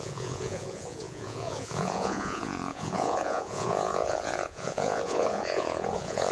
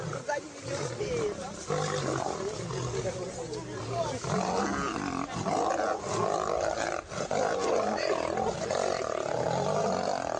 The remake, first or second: first